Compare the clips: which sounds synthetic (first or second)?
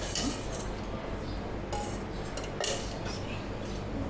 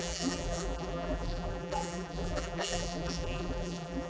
second